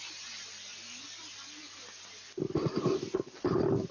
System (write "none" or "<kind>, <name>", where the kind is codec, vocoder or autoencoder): none